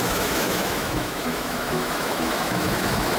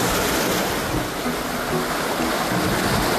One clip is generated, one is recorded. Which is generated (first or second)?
first